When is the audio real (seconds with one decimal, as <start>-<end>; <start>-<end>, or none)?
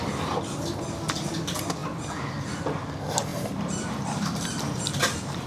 0.0-3.3; 4.8-5.5